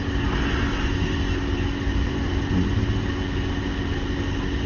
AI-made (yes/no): no